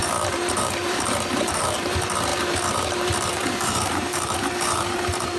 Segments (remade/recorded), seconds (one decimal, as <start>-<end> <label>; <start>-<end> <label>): 0.0-5.4 remade